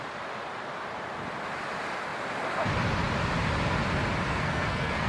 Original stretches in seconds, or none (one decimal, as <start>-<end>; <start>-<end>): 0.0-4.3